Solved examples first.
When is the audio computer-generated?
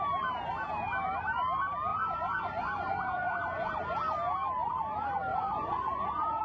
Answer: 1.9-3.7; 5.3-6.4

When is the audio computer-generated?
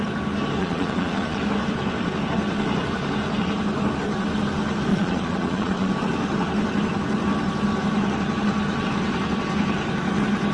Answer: 0.6-1.4; 4.9-5.9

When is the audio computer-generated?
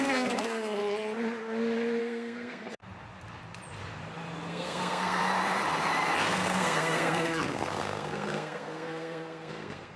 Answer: 0.0-0.8; 2.0-2.8; 4.5-5.2; 6.2-10.0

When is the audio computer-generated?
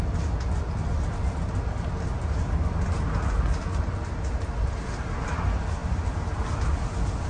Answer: none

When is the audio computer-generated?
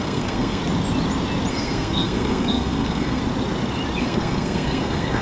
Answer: 0.0-0.6; 1.5-3.2; 4.0-5.2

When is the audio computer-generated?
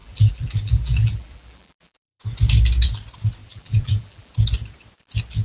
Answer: 0.0-2.2; 3.4-4.3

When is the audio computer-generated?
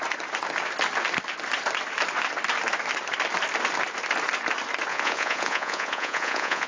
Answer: 4.9-6.7